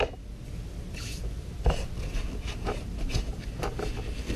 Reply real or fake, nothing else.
real